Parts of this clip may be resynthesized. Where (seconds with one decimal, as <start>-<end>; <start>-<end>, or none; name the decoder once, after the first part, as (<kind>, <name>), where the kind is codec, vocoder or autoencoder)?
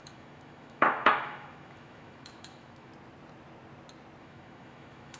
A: 0.0-2.9 (autoencoder, DAC-VAE); 4.2-5.2